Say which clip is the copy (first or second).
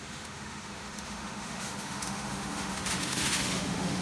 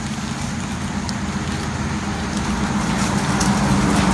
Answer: first